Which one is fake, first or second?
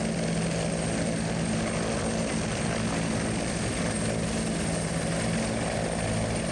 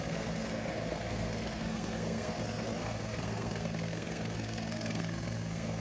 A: second